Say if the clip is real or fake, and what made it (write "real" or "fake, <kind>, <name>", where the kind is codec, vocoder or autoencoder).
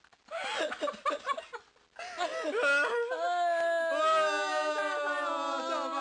real